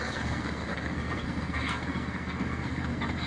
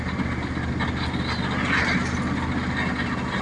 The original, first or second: second